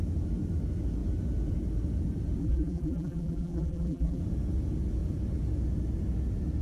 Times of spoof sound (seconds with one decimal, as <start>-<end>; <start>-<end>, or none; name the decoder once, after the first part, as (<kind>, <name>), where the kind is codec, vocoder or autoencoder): 2.4-4.2 (vocoder, BigVGAN v2)